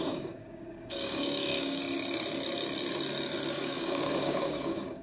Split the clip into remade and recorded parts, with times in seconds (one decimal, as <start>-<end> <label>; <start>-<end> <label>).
0.0-1.8 remade; 1.8-3.5 recorded; 3.5-5.0 remade